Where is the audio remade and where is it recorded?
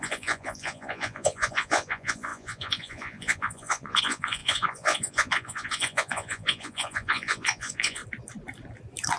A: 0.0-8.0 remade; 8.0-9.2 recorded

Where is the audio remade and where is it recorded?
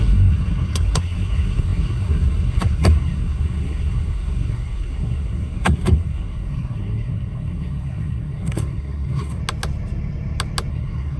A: 0.0-9.4 remade; 9.4-10.7 recorded; 10.7-11.2 remade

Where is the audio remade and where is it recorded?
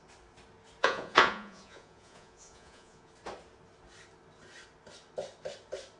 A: 0.0-0.8 recorded; 0.8-3.1 remade; 3.1-6.0 recorded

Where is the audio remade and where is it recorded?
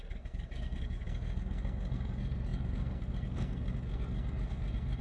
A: 0.0-5.0 remade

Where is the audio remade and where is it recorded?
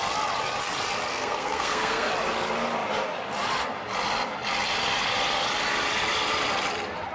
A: 0.0-1.1 recorded; 1.1-2.1 remade; 2.1-7.1 recorded